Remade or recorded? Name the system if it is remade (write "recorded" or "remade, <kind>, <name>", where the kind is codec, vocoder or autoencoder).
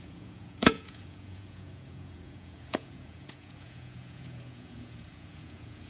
remade, vocoder, Vocos